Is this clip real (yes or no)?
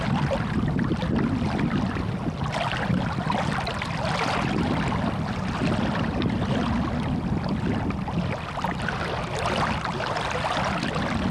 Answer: yes